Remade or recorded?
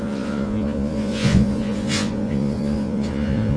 remade